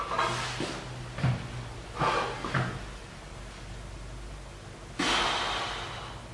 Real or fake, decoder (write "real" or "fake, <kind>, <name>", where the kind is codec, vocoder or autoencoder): real